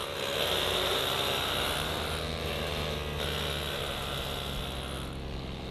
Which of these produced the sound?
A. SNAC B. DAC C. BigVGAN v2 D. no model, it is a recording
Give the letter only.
D